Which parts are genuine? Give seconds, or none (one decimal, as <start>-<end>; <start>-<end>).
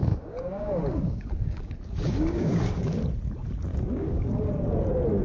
3.0-3.7; 4.5-5.2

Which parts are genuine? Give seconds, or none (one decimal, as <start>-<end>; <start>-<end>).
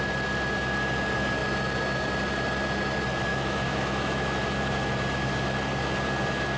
0.0-3.3; 4.6-6.6